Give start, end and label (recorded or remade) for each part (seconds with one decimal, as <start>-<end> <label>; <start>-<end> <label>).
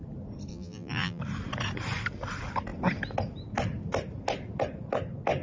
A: 0.0-0.5 recorded; 0.5-1.2 remade; 1.2-5.4 recorded